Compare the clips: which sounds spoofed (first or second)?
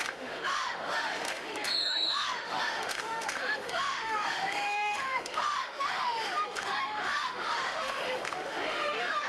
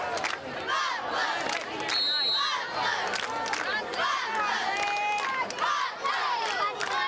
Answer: first